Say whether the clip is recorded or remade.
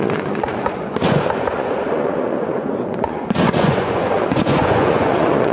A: remade